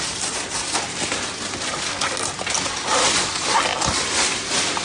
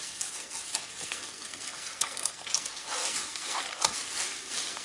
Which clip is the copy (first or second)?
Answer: second